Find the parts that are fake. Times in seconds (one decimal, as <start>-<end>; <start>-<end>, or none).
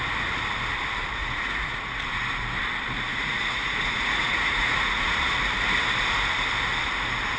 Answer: 1.2-2.2; 3.1-5.3